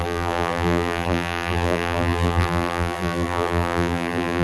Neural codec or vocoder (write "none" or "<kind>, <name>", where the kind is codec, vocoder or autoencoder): vocoder, BigVGAN v2